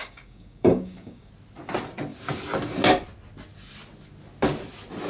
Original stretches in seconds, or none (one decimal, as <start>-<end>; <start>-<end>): 1.3-5.1